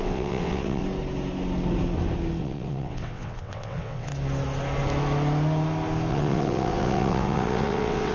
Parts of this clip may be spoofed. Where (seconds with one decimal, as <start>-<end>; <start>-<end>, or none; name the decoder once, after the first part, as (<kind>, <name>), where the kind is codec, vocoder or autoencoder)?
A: 0.0-0.8 (vocoder, WaveNeXt); 2.4-4.1; 6.1-8.1

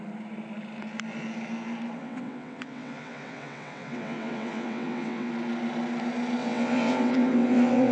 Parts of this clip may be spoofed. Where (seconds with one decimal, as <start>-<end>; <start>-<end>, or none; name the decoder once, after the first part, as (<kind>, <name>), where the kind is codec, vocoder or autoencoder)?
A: 2.0-5.3 (vocoder, WaveNeXt); 6.4-7.9

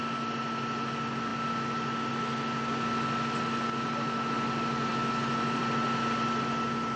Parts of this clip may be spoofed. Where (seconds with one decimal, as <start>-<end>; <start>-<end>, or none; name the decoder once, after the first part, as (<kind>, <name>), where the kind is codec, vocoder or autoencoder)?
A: none

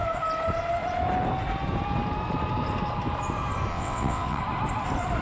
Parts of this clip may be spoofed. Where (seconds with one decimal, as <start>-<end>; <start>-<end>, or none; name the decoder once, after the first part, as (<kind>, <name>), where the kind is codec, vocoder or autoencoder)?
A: 3.7-4.4 (vocoder, WaveNeXt)

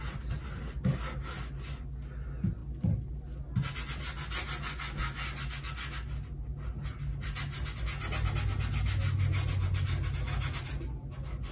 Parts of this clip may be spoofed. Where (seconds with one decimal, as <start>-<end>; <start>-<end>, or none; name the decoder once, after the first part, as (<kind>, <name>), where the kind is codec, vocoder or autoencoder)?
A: none